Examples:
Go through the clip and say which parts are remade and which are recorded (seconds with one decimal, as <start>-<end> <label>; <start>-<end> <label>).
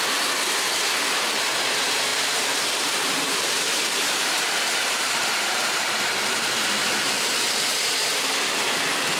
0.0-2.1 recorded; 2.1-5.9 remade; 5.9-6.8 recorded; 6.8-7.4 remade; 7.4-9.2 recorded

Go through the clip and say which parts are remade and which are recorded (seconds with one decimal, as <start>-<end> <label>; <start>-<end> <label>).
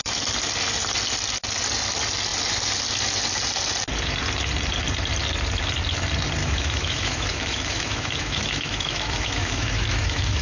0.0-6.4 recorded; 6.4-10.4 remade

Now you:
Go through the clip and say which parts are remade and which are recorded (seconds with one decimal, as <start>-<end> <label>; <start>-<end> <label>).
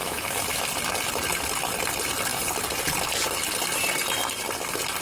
0.0-0.6 remade; 0.6-5.0 recorded